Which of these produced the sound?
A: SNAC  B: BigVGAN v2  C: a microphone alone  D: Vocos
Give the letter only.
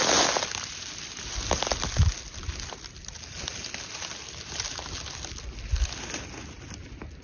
C